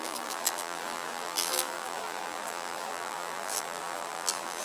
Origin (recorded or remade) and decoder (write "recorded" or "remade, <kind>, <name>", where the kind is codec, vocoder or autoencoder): remade, vocoder, BigVGAN v2